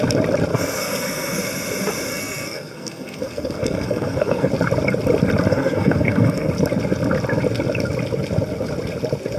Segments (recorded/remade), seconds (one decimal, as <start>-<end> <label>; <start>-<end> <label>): 0.0-0.5 recorded; 0.5-1.4 remade; 1.4-2.1 recorded; 2.1-4.5 remade; 4.5-5.5 recorded; 5.5-6.5 remade; 6.5-9.4 recorded